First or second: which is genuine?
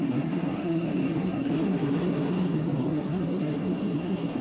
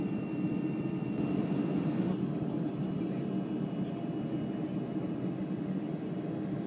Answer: second